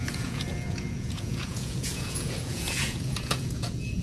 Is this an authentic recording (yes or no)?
no